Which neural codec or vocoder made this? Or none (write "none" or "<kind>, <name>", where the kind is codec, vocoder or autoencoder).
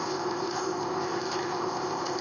codec, ZipCodec